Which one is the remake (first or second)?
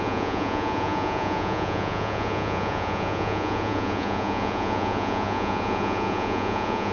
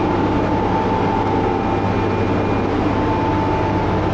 first